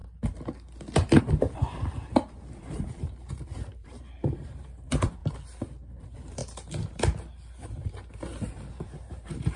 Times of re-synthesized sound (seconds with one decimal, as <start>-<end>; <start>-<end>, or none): 1.2-5.2; 6.0-6.4; 8.5-9.6